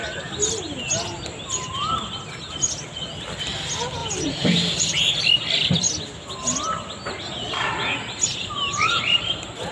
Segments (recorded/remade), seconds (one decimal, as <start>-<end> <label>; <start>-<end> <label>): 0.0-4.0 recorded; 4.0-5.2 remade; 5.2-8.3 recorded; 8.3-9.7 remade